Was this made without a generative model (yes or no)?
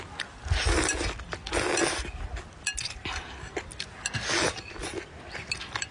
yes